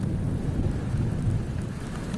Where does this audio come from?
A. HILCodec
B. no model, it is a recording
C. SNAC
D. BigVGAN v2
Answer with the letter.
B